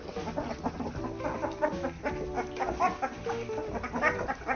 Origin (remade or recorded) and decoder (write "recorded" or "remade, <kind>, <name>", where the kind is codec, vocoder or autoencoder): recorded